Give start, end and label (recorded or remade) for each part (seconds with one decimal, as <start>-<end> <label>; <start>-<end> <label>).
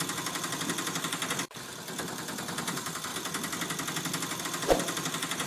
0.0-1.2 remade; 1.2-2.0 recorded; 2.0-3.1 remade; 3.1-4.4 recorded; 4.4-5.5 remade